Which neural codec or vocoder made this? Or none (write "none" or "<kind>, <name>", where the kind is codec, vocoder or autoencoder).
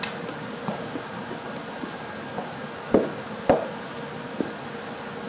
none